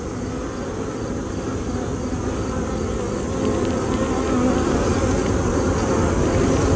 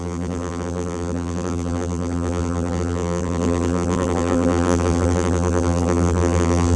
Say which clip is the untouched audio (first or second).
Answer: first